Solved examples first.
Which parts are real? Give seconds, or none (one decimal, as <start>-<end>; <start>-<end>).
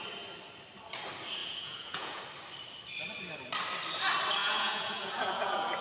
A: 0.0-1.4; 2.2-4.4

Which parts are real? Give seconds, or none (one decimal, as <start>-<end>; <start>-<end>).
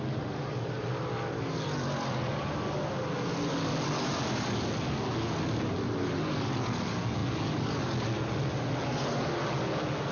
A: 0.0-10.1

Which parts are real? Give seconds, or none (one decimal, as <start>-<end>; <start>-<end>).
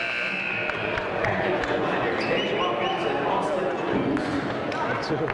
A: 0.0-0.6; 2.1-3.6; 4.4-5.3